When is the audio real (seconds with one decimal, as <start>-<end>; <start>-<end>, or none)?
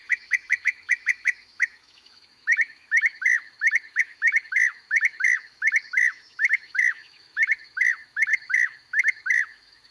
none